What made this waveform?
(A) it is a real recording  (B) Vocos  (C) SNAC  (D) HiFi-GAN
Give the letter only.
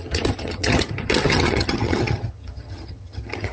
D